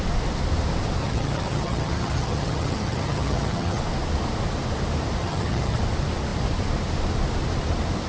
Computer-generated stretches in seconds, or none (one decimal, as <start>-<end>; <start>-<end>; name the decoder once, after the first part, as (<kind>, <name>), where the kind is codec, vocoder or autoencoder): 1.0-3.8 (vocoder, HiFi-GAN); 5.2-5.8